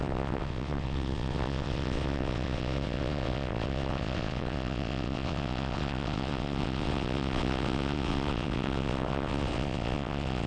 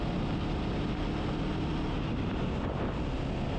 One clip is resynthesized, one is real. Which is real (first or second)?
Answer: second